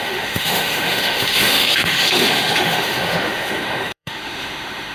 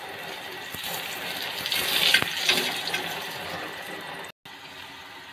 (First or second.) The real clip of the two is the second